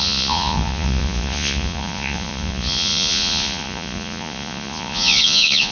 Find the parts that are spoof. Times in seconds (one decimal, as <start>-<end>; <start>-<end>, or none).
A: 0.0-5.7